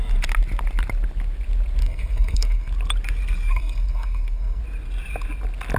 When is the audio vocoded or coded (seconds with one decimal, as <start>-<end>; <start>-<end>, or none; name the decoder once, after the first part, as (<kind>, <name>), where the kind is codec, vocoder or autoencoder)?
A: 1.8-2.7 (codec, SNAC); 3.5-4.6